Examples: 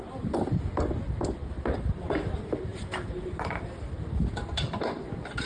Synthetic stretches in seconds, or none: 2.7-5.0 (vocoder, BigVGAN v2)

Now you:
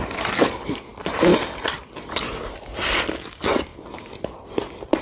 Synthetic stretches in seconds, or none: none

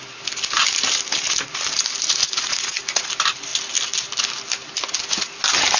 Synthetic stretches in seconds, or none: 2.2-3.1 (vocoder, Vocos)

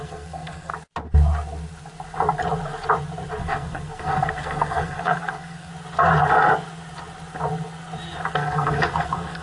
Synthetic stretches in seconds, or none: 0.0-0.7 (codec, SNAC); 3.4-5.7; 8.3-9.4

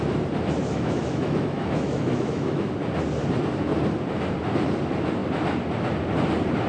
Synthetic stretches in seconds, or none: 0.7-2.7 (autoencoder, DAC-VAE)

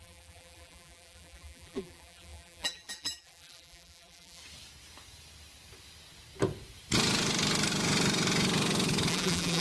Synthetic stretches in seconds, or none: 0.0-4.4 (vocoder, BigVGAN v2); 9.1-9.6